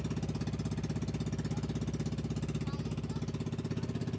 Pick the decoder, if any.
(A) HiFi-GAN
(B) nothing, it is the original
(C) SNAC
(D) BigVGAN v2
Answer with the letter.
B